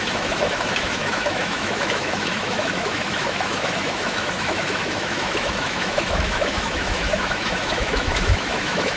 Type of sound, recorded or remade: remade